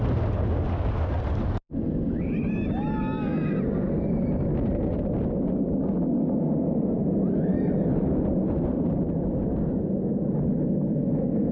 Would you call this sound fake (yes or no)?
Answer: no